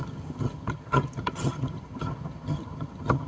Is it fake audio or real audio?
fake